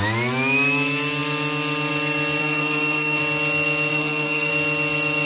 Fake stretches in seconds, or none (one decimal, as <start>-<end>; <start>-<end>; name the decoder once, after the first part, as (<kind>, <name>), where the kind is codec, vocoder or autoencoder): 2.4-3.2 (codec, SNAC); 3.9-4.5